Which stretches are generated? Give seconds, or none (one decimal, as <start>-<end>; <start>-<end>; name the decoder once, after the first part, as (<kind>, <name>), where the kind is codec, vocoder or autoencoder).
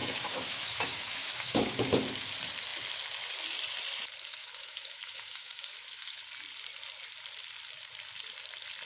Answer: 0.0-1.8 (autoencoder, DAC-VAE); 4.4-6.2